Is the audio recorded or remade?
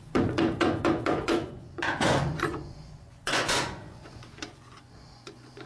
remade